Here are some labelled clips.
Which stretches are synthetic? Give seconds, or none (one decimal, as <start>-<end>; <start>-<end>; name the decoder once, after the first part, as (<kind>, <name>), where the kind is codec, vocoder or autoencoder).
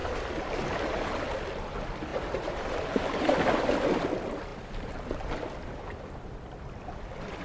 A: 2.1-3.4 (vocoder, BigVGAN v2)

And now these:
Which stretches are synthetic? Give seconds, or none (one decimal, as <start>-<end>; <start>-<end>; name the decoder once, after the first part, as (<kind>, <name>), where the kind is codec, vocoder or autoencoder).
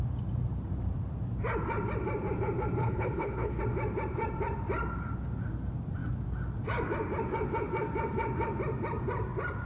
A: 2.8-3.6 (codec, HILCodec)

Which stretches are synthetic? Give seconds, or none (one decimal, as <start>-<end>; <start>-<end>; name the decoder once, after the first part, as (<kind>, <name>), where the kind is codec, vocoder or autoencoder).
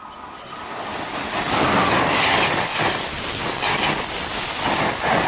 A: none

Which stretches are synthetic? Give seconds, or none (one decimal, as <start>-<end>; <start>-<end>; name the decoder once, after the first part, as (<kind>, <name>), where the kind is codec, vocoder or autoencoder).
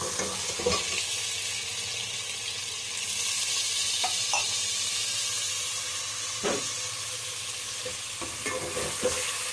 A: none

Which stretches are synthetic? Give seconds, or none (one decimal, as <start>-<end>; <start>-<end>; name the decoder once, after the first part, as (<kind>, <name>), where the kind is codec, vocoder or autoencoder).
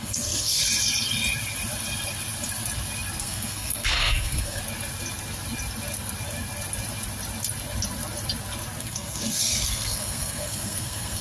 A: 0.0-0.6 (codec, SNAC); 3.2-4.6; 8.8-11.2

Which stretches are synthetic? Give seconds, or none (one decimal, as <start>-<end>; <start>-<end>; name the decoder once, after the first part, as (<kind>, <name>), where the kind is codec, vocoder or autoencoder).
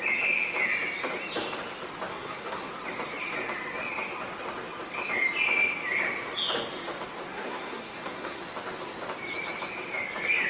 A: 2.1-2.7 (codec, SNAC); 7.3-8.4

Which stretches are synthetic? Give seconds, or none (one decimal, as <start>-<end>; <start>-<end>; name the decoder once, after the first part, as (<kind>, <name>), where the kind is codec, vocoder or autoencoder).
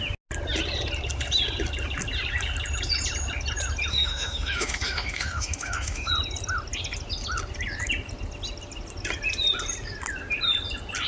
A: 3.9-6.1 (autoencoder, DAC-VAE)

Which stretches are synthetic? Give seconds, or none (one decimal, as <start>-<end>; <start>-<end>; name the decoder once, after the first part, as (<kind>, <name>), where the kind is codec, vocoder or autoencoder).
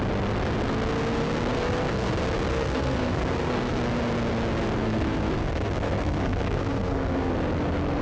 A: 1.2-2.1 (codec, SNAC); 2.5-3.7; 4.8-7.3